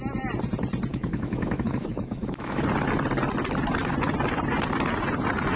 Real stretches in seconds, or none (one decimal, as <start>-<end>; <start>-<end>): 0.0-0.9; 2.6-5.6